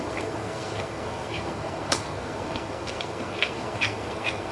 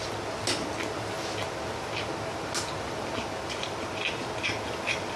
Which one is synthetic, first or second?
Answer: first